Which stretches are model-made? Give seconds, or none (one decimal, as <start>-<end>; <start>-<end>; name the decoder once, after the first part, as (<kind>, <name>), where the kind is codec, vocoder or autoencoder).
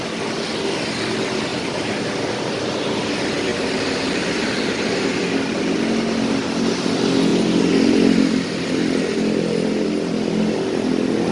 1.5-2.3 (vocoder, BigVGAN v2); 3.5-5.1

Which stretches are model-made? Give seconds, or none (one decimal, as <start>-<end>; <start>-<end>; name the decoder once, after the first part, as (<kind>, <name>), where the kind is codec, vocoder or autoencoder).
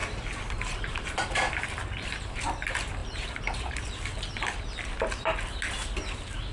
0.0-2.4 (vocoder, BigVGAN v2); 3.0-3.7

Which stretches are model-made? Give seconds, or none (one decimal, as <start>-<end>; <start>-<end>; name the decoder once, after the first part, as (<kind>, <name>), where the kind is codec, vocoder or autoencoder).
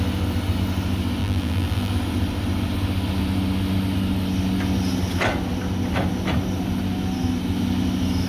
1.2-1.9 (vocoder, BigVGAN v2)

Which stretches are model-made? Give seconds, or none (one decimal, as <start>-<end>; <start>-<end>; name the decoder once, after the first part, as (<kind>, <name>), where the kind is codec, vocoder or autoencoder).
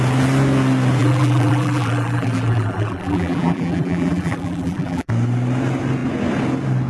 1.0-5.1 (vocoder, BigVGAN v2)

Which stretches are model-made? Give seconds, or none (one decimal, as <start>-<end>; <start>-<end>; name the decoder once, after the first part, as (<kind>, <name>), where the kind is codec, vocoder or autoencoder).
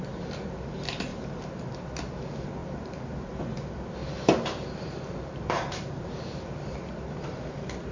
1.1-1.8 (vocoder, BigVGAN v2); 2.6-3.3; 4.0-6.1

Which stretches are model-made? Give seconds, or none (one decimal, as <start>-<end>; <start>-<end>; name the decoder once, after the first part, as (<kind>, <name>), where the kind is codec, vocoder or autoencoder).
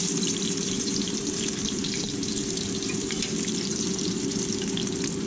0.0-3.2 (vocoder, BigVGAN v2); 3.7-4.4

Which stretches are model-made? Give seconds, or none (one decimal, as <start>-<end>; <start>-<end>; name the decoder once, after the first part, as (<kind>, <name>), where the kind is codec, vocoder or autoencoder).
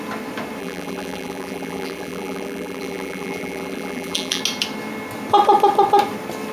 0.6-4.4 (vocoder, BigVGAN v2)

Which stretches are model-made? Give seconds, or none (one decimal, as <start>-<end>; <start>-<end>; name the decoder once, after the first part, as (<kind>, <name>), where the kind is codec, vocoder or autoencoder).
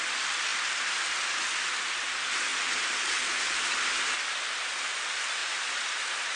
none